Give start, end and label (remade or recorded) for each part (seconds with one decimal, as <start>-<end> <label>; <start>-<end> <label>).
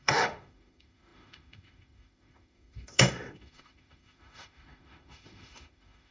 0.0-6.1 remade